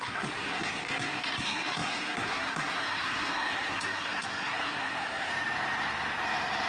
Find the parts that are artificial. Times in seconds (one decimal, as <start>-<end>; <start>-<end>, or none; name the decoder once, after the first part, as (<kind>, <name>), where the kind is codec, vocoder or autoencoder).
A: 0.0-5.3 (codec, SNAC)